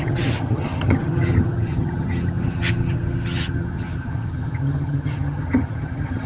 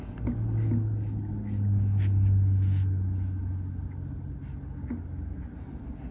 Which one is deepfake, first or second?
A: first